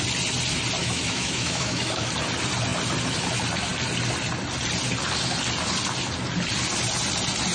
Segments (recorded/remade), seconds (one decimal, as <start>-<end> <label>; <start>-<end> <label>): 0.0-0.8 recorded; 0.8-2.1 remade; 2.1-7.5 recorded